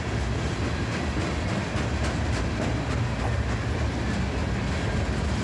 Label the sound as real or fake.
real